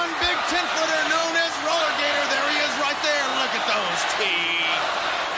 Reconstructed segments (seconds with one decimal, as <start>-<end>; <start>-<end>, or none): none